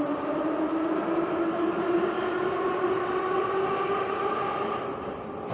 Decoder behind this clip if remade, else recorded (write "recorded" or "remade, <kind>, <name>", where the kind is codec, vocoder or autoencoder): recorded